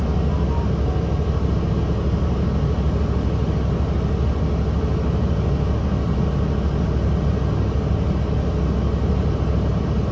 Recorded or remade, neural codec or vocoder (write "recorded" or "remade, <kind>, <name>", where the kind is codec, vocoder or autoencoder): recorded